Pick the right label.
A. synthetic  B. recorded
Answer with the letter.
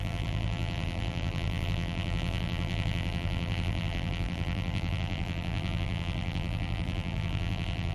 A